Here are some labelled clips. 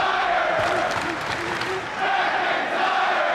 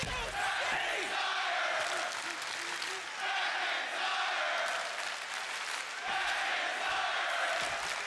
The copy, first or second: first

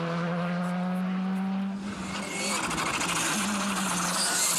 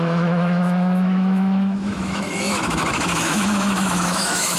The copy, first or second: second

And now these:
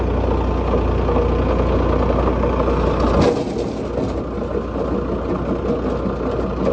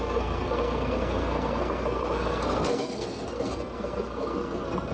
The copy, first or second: second